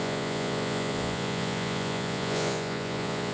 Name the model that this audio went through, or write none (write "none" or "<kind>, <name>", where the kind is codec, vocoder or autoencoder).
vocoder, Vocos